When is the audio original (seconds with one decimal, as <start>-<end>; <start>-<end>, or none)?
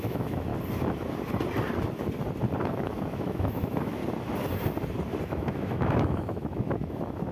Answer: 0.5-2.6; 4.0-5.2